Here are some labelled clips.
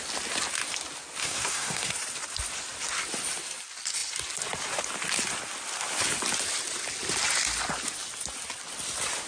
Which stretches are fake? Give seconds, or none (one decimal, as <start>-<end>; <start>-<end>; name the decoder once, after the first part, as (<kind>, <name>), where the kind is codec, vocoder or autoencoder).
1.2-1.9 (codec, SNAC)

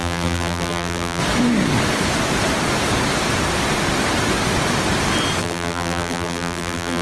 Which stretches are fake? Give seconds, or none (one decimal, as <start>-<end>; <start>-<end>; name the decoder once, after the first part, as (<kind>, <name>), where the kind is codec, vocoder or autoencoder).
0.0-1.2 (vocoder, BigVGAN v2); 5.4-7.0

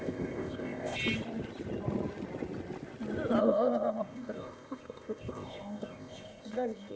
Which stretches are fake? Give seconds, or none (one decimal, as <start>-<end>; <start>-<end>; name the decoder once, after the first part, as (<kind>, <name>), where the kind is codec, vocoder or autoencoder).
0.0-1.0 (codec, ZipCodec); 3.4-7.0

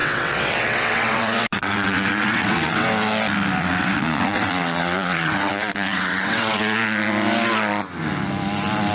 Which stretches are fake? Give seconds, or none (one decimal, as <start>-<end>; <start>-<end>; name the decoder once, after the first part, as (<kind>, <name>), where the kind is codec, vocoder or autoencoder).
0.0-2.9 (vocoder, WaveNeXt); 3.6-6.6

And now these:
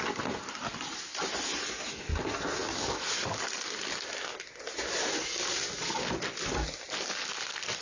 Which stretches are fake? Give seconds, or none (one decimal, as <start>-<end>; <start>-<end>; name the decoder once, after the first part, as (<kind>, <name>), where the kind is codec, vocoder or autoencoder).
none

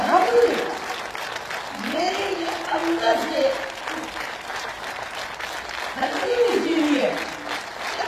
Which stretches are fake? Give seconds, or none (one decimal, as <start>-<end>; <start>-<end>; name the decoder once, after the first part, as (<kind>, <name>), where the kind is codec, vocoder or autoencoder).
4.5-5.2 (vocoder, BigVGAN v2)